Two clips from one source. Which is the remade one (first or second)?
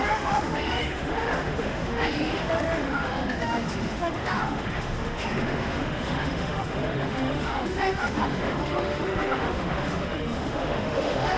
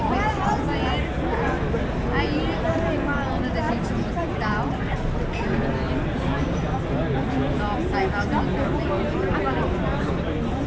first